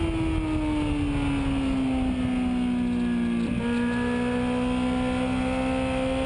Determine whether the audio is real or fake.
real